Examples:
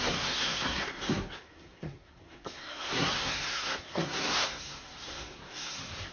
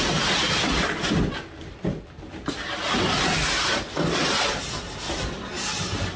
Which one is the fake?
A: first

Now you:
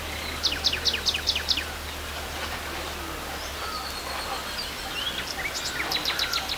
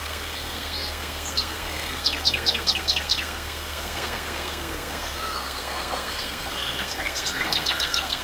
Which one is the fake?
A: second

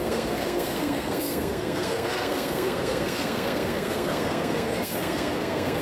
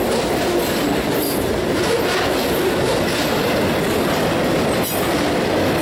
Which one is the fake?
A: first